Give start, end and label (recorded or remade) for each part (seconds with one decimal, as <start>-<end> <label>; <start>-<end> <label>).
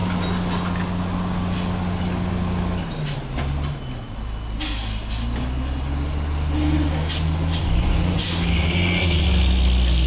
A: 0.0-7.6 recorded; 7.6-8.3 remade; 8.3-10.1 recorded